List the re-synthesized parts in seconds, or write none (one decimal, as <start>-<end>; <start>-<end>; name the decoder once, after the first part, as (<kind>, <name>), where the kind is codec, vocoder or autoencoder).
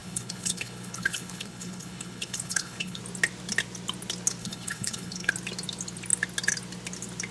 0.0-3.0 (codec, HILCodec); 4.4-5.3